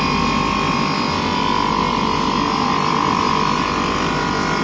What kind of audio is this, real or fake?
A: real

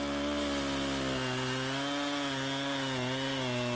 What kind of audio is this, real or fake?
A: real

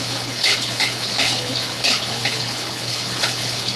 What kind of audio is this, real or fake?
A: fake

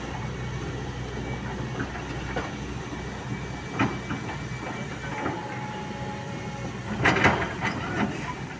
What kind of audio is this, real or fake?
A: real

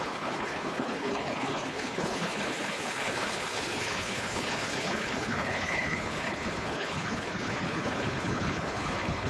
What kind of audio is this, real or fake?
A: fake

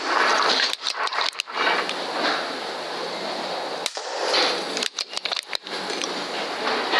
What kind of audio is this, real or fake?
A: real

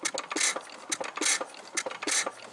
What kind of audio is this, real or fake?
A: real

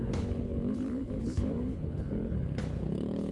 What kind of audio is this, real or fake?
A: fake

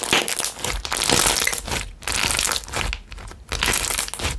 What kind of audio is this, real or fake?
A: real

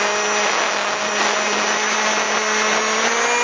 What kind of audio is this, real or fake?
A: real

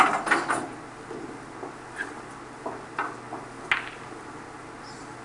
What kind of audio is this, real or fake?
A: real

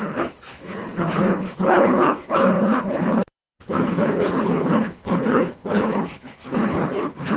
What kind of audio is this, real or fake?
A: fake